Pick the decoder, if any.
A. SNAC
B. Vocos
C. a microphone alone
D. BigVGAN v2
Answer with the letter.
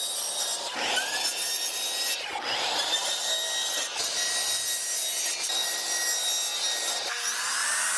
C